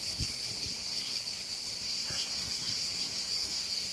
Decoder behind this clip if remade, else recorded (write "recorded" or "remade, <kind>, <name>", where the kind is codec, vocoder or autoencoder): remade, codec, SNAC